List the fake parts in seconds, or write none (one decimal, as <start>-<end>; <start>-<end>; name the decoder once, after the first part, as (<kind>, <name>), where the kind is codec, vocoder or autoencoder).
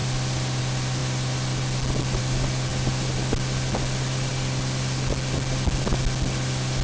none